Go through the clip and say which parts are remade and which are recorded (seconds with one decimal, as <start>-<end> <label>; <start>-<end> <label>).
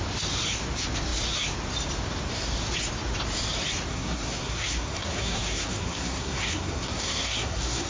0.0-3.9 recorded; 3.9-7.9 remade